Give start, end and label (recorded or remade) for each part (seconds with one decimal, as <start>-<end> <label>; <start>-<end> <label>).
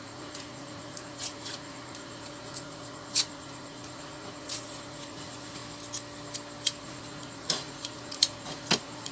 0.0-5.6 remade; 5.6-6.8 recorded; 6.8-9.1 remade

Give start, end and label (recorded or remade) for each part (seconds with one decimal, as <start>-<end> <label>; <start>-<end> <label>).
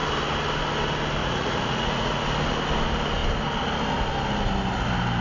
0.0-1.2 recorded; 1.2-2.2 remade; 2.2-5.2 recorded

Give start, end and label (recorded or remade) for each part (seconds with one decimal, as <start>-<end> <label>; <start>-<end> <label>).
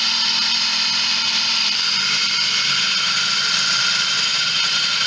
0.0-4.3 recorded; 4.3-5.1 remade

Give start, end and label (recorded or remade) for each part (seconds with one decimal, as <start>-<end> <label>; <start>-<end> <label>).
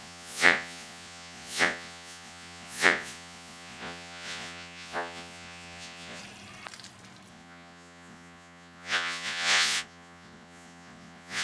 0.0-6.2 remade; 6.2-7.3 recorded; 7.3-11.4 remade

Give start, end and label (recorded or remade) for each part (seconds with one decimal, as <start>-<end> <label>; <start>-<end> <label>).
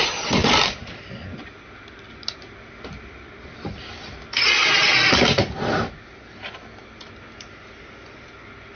0.0-8.8 recorded